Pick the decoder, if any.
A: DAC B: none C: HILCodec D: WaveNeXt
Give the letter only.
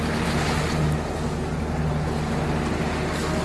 B